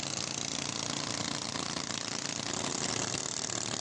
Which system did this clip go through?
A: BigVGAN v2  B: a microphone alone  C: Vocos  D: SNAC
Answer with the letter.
B